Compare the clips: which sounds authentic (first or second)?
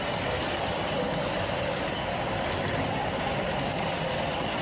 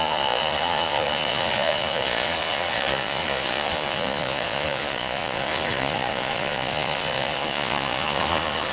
first